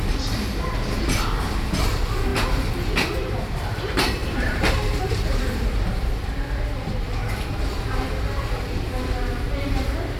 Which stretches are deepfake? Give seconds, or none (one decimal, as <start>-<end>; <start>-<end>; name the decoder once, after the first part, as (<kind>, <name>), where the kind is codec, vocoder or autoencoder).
none